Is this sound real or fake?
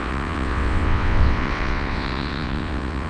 fake